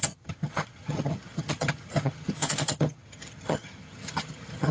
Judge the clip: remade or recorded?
remade